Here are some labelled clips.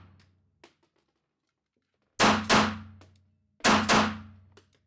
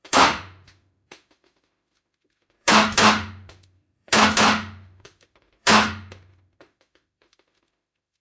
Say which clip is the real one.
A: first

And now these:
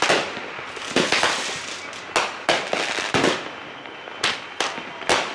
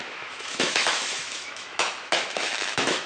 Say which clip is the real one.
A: first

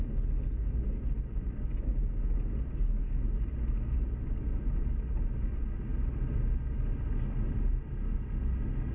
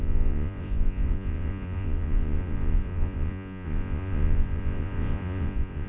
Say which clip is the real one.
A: first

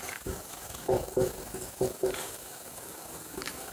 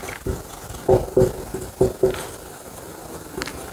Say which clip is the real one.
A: second